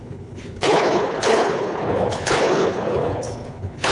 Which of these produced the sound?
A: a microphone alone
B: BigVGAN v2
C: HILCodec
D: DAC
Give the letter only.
C